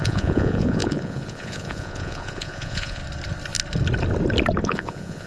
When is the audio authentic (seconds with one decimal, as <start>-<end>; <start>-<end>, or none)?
3.0-4.6